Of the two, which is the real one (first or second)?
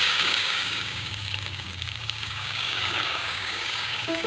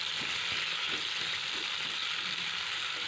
second